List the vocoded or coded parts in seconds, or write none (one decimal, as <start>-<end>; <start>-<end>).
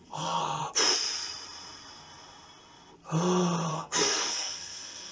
0.0-0.6; 3.7-5.1